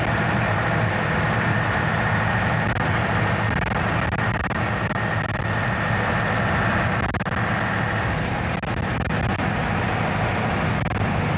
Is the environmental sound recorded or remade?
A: recorded